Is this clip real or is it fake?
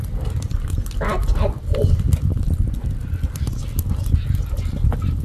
real